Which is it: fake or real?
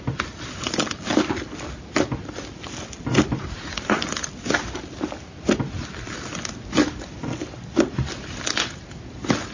real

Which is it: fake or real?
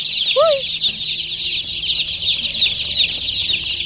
real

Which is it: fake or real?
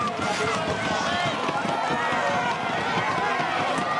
real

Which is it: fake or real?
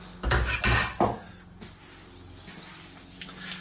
real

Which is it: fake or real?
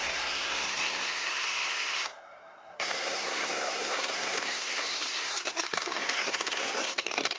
fake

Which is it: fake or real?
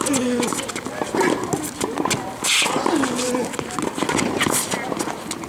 real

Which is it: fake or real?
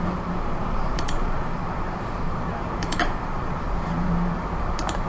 fake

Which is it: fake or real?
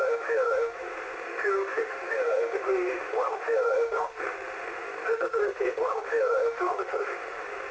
fake